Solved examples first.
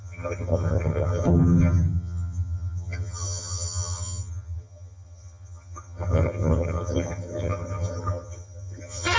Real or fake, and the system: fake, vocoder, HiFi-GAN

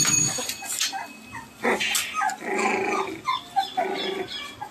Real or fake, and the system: real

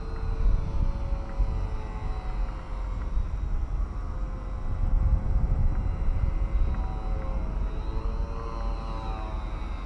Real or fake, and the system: real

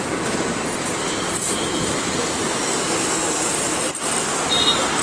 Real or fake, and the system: real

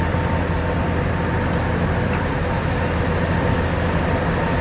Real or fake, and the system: real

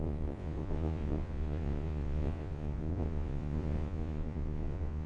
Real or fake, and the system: fake, vocoder, Vocos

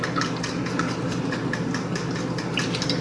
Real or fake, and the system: real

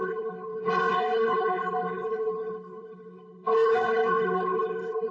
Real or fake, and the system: fake, codec, HILCodec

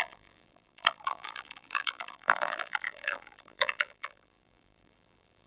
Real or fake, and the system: fake, vocoder, BigVGAN v2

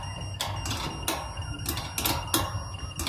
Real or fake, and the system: real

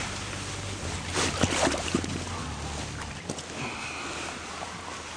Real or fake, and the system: real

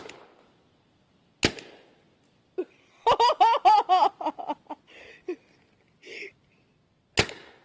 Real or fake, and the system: real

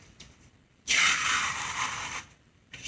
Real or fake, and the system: fake, vocoder, BigVGAN v2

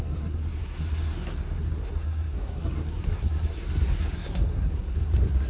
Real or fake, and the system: fake, codec, SNAC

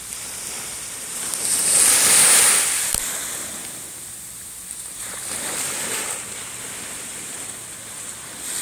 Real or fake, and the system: fake, vocoder, BigVGAN v2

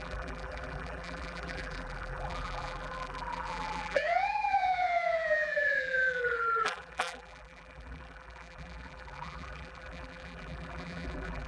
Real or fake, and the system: fake, vocoder, BigVGAN v2